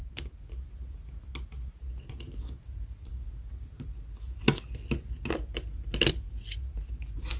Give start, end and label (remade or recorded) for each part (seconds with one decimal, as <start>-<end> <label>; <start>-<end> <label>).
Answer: 0.0-2.6 recorded; 2.6-3.1 remade; 3.1-6.1 recorded; 6.1-7.4 remade